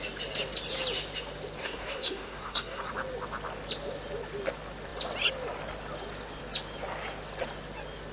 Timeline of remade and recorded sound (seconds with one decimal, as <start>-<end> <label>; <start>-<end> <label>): 0.0-1.6 recorded; 1.6-2.9 remade; 2.9-8.1 recorded